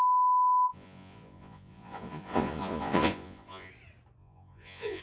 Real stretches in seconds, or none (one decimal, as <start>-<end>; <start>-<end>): 0.0-0.7; 3.7-4.2